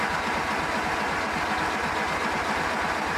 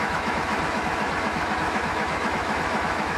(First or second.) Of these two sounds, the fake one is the second